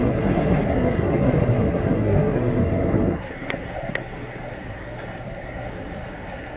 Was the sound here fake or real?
fake